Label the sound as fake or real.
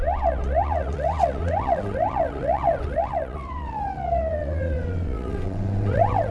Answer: fake